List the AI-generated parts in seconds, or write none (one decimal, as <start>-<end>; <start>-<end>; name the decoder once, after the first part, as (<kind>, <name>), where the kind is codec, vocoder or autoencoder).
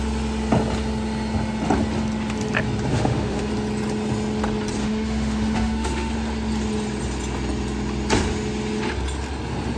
2.9-3.5 (autoencoder, DAC-VAE); 4.8-6.1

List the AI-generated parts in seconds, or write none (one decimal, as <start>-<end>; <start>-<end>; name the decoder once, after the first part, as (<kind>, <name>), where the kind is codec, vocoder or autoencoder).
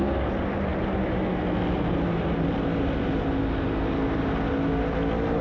none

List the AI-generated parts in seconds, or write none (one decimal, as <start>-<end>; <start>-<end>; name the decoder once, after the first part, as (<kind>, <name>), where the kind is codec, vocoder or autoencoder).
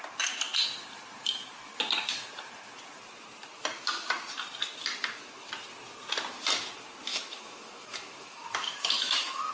7.1-9.5 (autoencoder, DAC-VAE)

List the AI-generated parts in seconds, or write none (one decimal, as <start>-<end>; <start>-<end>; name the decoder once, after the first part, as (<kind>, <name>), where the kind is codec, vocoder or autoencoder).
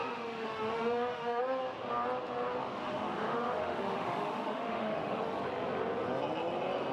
0.0-1.4 (autoencoder, DAC-VAE); 2.8-5.2